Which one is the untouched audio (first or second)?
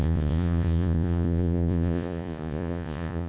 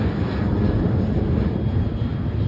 second